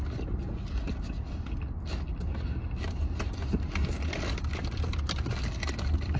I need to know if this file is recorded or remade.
recorded